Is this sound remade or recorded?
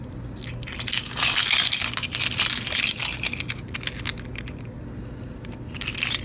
recorded